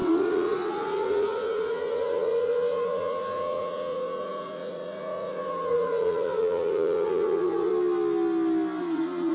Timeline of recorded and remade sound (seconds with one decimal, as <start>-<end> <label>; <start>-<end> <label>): 0.0-7.7 remade; 7.7-8.8 recorded; 8.8-9.3 remade